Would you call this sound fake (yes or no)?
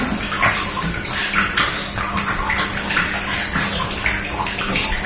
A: no